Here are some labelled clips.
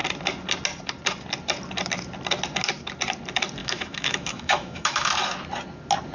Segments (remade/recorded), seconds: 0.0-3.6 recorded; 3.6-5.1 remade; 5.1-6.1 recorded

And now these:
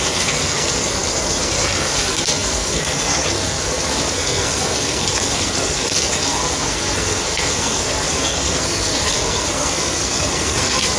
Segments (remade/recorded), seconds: 0.0-11.0 remade

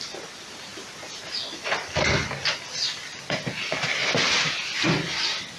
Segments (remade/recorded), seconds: 0.0-5.6 recorded

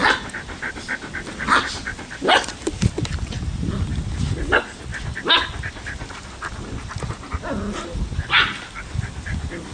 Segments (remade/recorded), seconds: 0.0-9.7 recorded

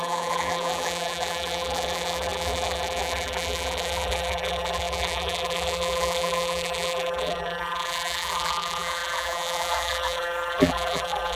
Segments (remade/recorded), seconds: 0.0-11.4 remade